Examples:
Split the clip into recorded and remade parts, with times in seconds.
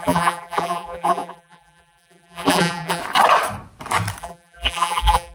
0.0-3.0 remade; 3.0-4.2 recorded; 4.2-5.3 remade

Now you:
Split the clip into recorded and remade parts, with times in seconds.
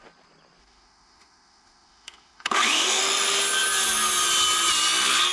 0.0-0.6 recorded; 0.6-3.0 remade; 3.0-5.3 recorded